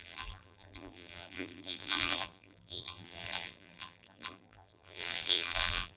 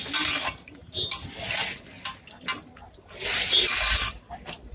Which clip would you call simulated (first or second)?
first